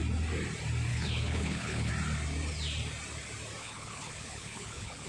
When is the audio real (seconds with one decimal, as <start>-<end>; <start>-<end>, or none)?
0.0-0.9; 1.9-3.6